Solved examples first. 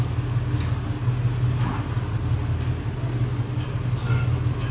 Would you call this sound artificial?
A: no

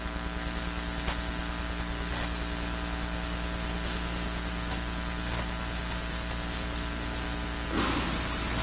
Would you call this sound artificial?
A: no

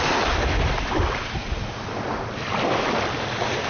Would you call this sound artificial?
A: no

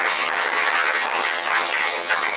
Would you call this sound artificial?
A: yes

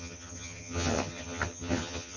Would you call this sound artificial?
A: yes